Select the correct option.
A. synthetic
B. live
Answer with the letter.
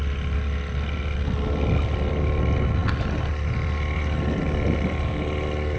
B